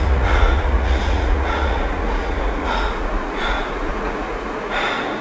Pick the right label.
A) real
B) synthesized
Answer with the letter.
B